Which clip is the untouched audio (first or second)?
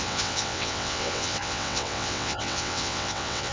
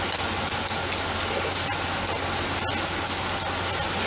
second